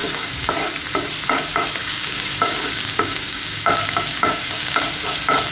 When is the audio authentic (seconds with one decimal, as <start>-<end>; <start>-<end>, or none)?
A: 0.5-1.8; 4.8-5.5